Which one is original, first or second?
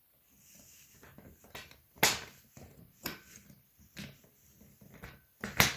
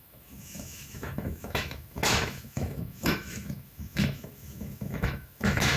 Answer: first